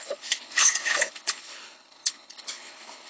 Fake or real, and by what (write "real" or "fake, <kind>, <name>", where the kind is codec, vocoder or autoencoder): fake, codec, HILCodec